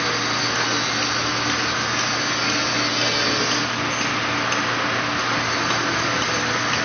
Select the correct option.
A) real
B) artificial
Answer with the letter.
A